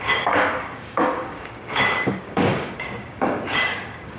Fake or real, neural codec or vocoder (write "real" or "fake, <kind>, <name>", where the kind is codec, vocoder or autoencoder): fake, codec, DAC